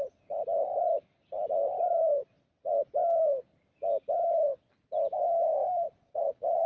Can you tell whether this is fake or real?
real